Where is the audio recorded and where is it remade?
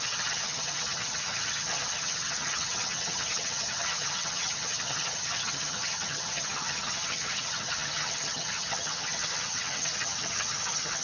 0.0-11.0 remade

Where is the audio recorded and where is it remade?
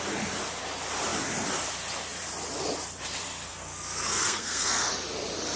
0.0-3.5 recorded; 3.5-4.9 remade; 4.9-5.6 recorded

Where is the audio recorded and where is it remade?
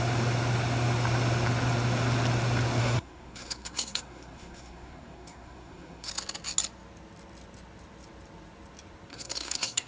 0.0-2.8 recorded; 2.8-6.1 remade; 6.1-9.1 recorded; 9.1-9.9 remade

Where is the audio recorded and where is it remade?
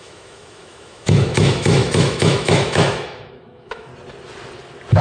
0.0-3.9 remade; 3.9-5.0 recorded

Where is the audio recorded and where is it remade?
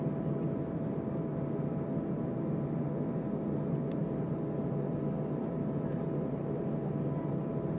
0.0-7.8 recorded